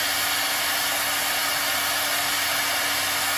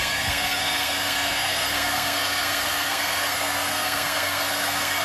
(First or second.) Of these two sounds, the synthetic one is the second